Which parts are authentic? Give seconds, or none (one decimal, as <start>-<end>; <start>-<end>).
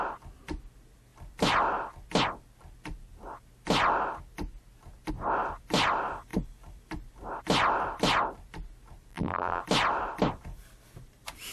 0.0-9.1; 9.6-11.5